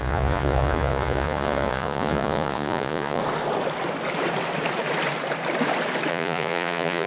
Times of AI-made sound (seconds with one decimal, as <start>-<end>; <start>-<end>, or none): 0.0-3.2; 6.1-7.1